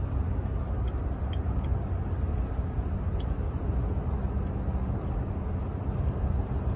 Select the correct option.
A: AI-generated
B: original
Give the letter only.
B